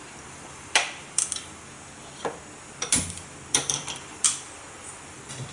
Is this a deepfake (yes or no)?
yes